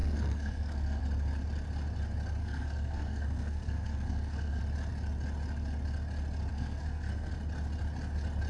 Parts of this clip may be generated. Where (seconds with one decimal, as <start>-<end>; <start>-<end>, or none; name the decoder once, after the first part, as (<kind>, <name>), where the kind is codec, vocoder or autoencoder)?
0.0-1.0 (codec, SNAC); 2.4-4.6; 6.5-7.3